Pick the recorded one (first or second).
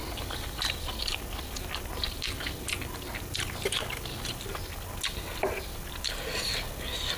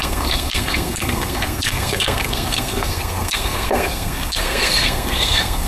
first